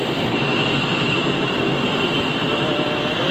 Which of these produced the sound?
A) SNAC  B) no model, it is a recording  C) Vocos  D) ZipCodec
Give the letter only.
B